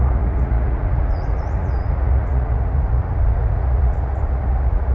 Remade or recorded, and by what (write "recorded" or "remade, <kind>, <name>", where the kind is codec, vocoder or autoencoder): remade, vocoder, Vocos